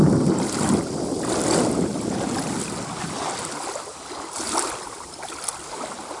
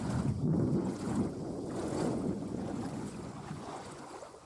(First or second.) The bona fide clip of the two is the first